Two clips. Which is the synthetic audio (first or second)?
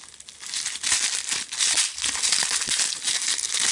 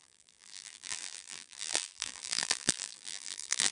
second